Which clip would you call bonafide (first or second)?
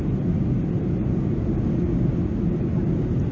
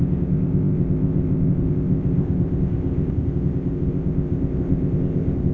first